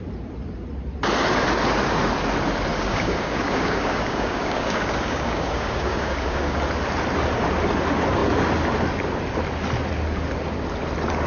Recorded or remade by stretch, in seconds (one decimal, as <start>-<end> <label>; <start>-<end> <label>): 0.0-2.7 recorded; 2.7-6.6 remade; 6.6-11.3 recorded